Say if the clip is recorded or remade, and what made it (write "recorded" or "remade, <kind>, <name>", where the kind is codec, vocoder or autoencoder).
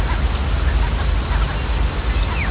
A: recorded